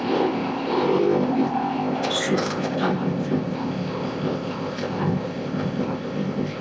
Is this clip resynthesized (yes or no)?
yes